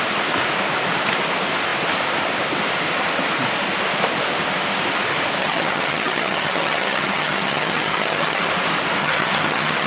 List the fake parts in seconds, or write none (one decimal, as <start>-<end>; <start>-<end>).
5.4-8.5; 9.0-9.9